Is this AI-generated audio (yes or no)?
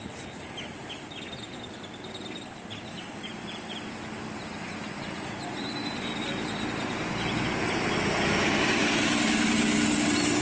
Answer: no